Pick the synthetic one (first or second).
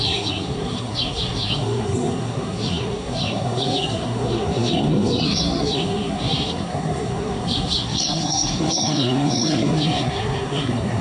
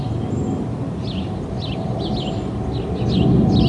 first